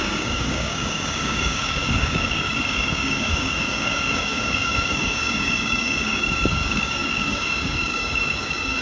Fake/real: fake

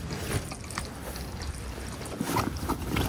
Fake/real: real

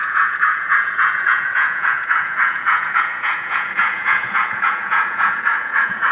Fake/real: fake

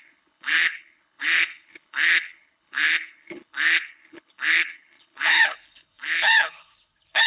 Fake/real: fake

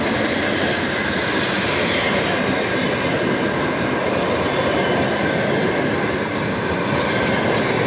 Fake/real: real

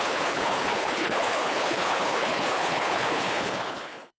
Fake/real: fake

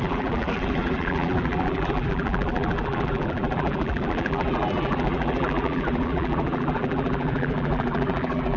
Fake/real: fake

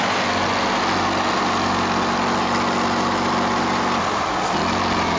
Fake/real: real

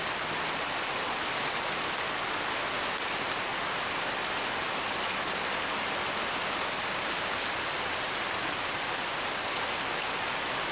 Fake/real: real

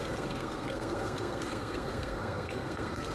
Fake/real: fake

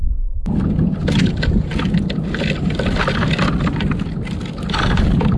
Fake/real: real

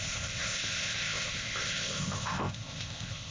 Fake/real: fake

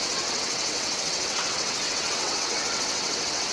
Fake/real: fake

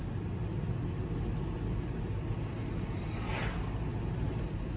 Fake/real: real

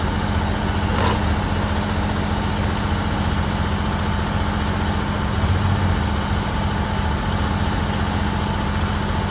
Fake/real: real